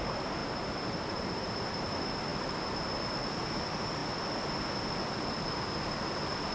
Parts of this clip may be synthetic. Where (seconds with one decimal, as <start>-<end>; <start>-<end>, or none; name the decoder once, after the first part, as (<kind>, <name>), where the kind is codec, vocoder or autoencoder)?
0.4-1.9 (vocoder, BigVGAN v2)